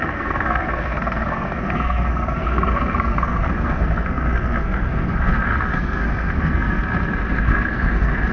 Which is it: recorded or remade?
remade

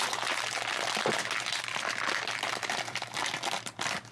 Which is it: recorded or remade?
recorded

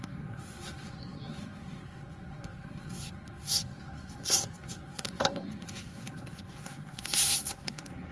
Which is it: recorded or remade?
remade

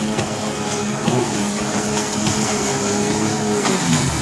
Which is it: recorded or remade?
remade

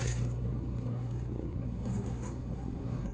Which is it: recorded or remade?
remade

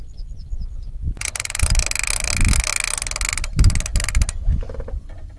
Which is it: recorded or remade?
recorded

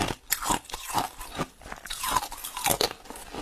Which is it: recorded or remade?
recorded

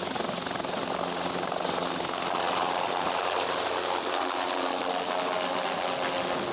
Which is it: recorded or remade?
recorded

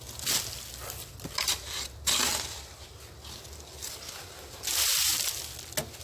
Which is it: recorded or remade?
recorded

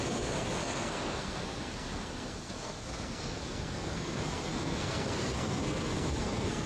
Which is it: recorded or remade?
remade